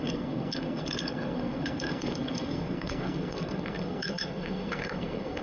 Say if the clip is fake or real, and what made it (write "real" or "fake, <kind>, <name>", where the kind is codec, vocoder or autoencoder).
fake, codec, SNAC